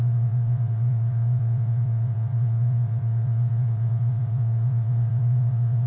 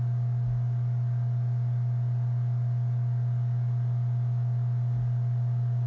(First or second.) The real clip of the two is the second